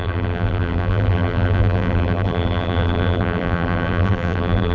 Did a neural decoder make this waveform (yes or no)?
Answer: yes